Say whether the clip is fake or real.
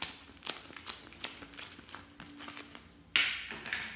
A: real